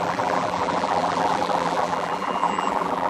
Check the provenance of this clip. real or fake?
fake